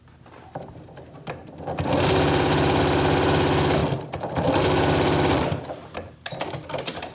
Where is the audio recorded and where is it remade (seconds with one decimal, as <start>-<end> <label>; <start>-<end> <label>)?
0.0-7.1 recorded